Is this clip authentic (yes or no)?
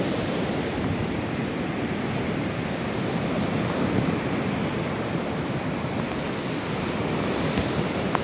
yes